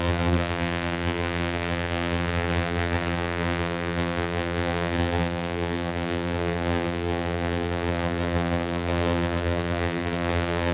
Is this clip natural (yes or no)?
no